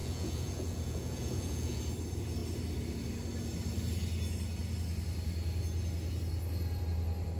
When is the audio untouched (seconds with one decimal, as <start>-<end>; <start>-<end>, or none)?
1.8-7.4